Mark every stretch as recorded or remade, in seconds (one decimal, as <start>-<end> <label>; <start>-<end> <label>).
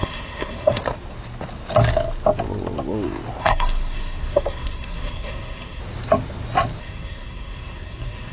0.0-0.8 remade; 0.8-3.4 recorded; 3.4-5.8 remade; 5.8-6.8 recorded; 6.8-8.3 remade